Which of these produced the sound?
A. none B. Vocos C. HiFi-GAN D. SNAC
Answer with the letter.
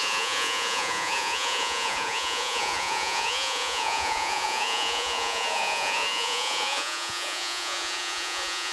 B